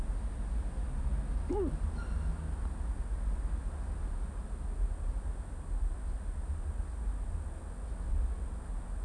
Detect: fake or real real